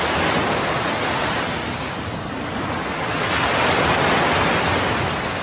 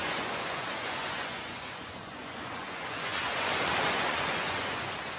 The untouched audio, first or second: first